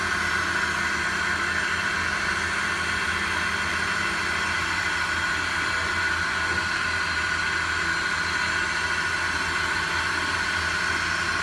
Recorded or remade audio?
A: recorded